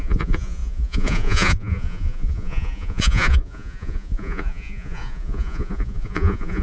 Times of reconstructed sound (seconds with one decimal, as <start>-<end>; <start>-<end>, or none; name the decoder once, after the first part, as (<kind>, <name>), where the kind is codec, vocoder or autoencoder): 0.0-6.6 (vocoder, Vocos)